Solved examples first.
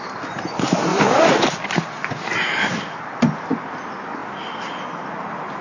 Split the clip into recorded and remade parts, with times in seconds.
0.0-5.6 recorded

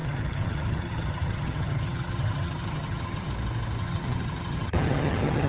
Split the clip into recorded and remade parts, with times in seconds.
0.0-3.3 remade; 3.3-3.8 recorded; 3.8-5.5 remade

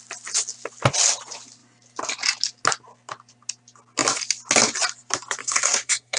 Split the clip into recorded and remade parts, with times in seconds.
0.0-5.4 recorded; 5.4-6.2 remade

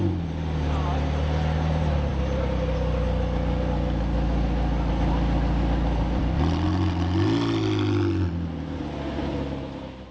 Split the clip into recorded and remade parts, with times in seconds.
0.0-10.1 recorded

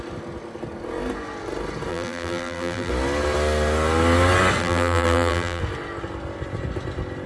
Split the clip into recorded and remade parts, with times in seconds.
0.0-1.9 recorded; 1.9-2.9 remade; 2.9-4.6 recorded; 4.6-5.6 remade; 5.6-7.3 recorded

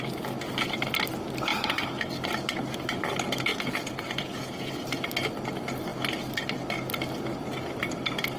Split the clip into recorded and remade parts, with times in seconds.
0.0-3.5 recorded; 3.5-4.7 remade; 4.7-8.4 recorded

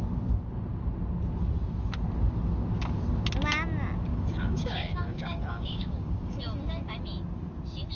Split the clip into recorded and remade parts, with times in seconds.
0.0-4.1 recorded; 4.1-6.4 remade; 6.4-8.0 recorded